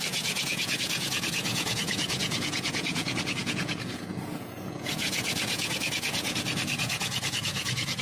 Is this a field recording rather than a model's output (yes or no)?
no